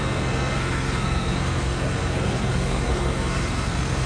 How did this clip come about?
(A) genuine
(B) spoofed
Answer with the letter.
B